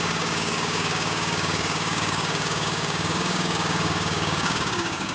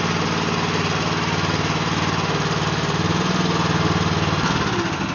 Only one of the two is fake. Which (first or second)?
first